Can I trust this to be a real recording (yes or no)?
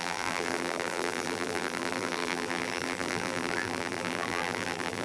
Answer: no